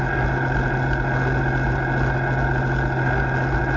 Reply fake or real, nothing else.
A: real